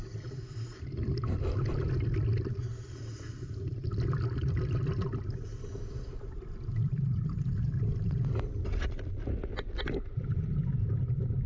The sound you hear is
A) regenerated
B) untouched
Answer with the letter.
B